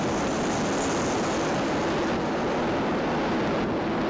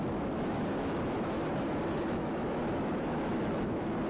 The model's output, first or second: second